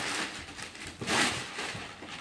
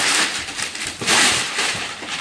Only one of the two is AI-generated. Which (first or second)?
second